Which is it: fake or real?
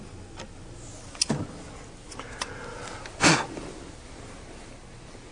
real